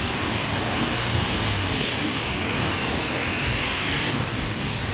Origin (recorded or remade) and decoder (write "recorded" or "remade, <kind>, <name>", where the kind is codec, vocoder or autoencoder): remade, codec, DAC